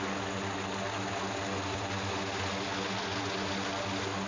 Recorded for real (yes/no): yes